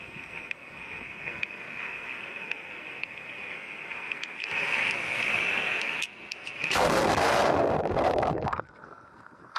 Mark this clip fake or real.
fake